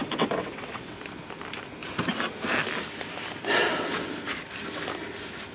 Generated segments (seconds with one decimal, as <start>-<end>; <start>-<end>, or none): 0.0-1.0